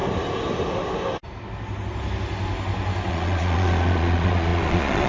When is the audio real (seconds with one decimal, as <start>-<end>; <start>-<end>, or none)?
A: 0.0-3.1